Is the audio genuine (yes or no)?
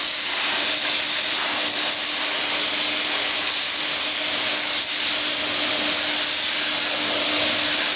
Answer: yes